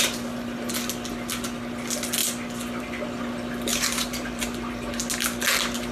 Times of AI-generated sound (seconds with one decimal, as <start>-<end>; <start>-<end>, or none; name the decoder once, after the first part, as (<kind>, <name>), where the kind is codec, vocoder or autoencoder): 3.7-4.4 (vocoder, BigVGAN v2)